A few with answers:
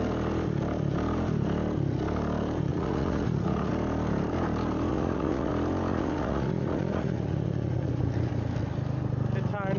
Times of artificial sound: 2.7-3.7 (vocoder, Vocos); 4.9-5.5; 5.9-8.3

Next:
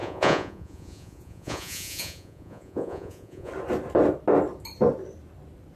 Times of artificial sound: 0.0-3.5 (vocoder, Vocos)

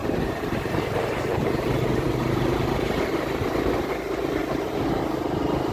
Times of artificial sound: 0.0-3.4 (vocoder, BigVGAN v2)

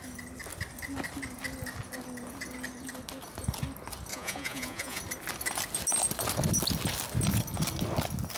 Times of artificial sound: 4.1-5.0 (vocoder, Vocos)

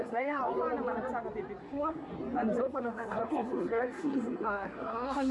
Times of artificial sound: 0.0-0.4 (codec, SNAC); 1.6-2.1; 2.6-5.3

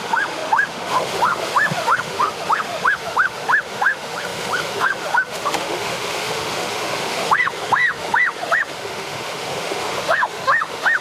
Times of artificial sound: 0.0-11.0 (autoencoder, DAC-VAE)

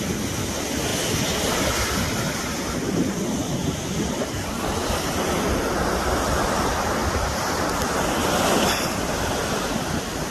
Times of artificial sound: none